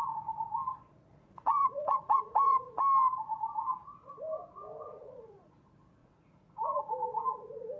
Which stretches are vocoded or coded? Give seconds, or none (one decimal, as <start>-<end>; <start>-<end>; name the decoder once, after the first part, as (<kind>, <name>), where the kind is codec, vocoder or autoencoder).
1.1-2.8 (vocoder, Vocos); 5.0-5.5; 6.0-6.8